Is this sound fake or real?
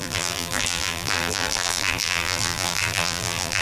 fake